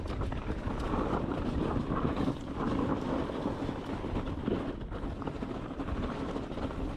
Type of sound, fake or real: real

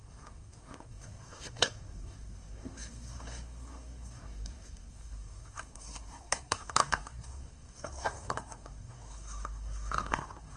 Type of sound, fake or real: fake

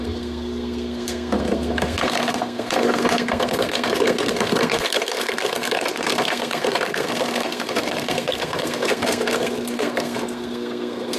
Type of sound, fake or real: fake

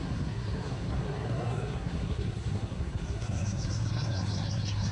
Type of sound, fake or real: fake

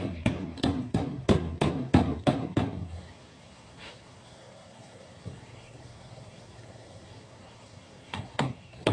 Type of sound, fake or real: fake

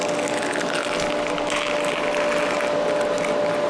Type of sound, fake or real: real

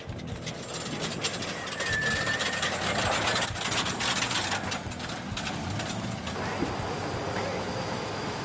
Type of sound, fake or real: real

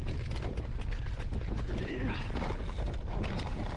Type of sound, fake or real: real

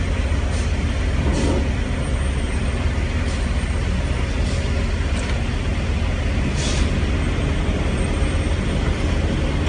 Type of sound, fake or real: real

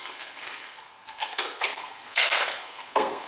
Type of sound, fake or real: fake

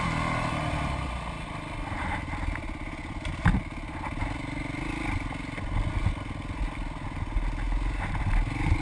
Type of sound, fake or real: real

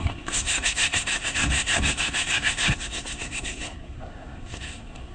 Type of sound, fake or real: fake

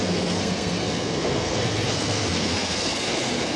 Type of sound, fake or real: fake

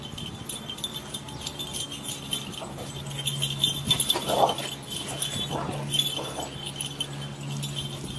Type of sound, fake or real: real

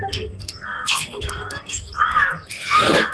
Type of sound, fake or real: fake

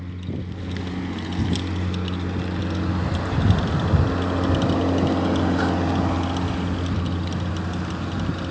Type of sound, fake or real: real